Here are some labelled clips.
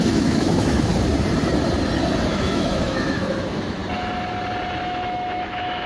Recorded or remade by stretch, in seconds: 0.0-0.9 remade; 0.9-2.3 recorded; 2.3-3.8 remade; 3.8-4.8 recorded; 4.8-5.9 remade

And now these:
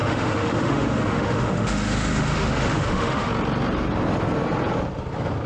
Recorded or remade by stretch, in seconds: 0.0-3.3 remade; 3.3-5.5 recorded